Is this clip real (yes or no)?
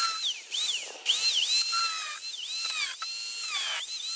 yes